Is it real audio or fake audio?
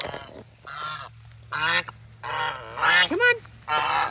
real